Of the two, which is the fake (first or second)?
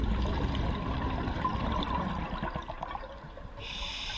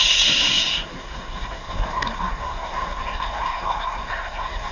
second